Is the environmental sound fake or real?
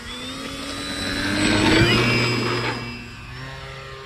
real